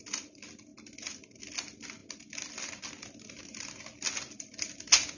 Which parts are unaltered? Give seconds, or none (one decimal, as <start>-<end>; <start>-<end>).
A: 0.0-5.2